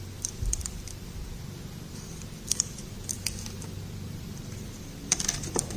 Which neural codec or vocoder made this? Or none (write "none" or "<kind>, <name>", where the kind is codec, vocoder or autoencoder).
vocoder, BigVGAN v2